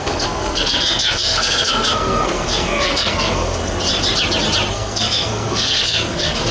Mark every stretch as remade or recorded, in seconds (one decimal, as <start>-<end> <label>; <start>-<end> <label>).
0.0-3.6 remade; 3.6-4.7 recorded; 4.7-6.5 remade